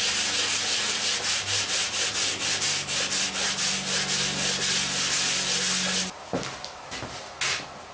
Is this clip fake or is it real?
real